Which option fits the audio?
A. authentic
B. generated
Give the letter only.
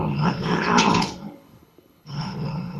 B